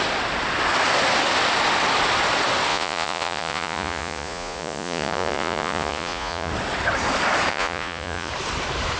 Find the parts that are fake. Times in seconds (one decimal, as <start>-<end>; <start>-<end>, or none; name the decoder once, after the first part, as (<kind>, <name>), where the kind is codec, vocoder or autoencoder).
2.7-6.5 (vocoder, Vocos); 7.5-8.3

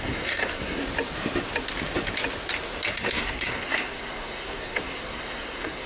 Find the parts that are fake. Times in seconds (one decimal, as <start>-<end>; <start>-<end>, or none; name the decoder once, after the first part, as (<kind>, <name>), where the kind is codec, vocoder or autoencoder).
0.0-0.8 (codec, SNAC); 2.9-5.9

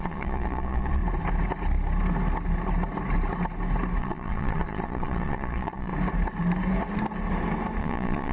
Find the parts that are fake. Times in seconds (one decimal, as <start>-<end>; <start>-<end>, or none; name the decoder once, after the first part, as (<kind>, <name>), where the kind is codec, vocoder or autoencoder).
0.0-1.0 (vocoder, Vocos); 4.0-5.9; 7.8-8.3

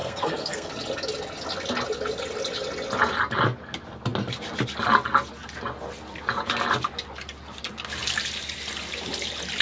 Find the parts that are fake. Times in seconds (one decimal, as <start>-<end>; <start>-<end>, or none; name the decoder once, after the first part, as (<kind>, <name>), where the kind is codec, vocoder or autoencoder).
0.0-0.7 (codec, SNAC)

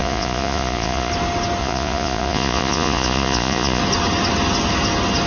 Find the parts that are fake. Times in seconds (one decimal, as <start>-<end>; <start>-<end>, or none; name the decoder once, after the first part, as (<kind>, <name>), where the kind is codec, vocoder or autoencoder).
0.0-1.1 (vocoder, Vocos); 1.6-3.8